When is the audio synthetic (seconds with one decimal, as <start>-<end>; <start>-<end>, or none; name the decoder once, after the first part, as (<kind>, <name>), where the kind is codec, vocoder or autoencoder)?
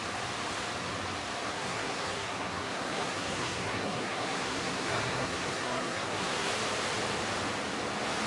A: 1.5-6.5 (codec, SNAC)